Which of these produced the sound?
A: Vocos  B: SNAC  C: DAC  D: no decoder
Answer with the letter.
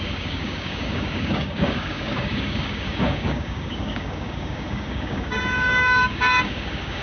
C